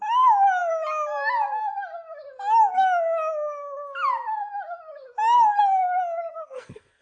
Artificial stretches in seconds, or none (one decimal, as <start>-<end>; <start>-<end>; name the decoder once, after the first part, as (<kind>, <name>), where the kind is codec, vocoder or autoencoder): 6.3-7.0 (codec, SNAC)